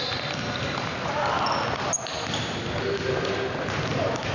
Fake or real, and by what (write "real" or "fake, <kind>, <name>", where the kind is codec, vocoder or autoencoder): real